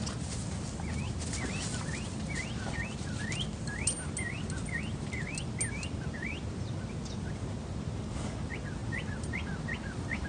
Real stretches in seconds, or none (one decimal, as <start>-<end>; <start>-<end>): 0.0-10.3